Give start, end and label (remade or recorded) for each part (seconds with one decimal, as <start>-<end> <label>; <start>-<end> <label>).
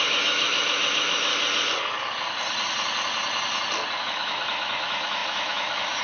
0.0-1.3 remade; 1.3-4.0 recorded; 4.0-6.0 remade